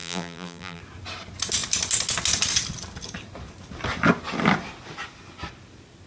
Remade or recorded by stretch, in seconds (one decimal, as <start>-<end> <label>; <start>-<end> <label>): 0.0-0.8 remade; 0.8-6.1 recorded

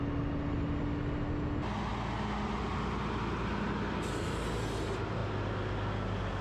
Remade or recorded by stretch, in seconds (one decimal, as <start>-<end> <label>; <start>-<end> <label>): 0.0-6.4 recorded

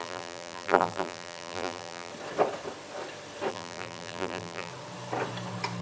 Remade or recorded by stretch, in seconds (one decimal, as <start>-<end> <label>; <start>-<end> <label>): 0.0-2.1 remade; 2.1-3.5 recorded; 3.5-4.7 remade; 4.7-5.8 recorded

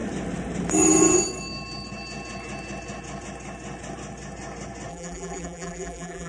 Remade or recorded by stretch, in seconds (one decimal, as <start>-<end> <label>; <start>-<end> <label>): 0.0-4.9 recorded; 4.9-6.3 remade

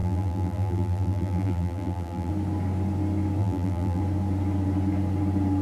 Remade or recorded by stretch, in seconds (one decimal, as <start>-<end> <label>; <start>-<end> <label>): 0.0-2.3 remade; 2.3-3.4 recorded; 3.4-4.0 remade; 4.0-5.6 recorded